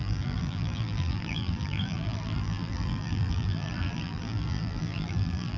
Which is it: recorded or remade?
remade